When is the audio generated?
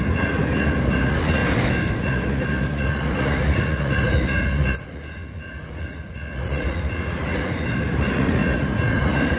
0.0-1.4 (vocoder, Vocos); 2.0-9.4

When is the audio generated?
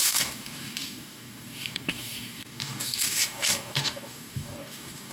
0.0-5.1 (codec, DAC)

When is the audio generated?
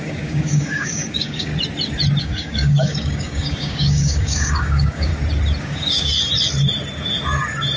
0.0-1.5 (codec, DAC); 2.2-5.1; 5.6-6.1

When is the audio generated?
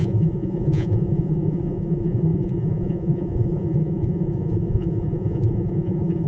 0.0-6.3 (vocoder, Vocos)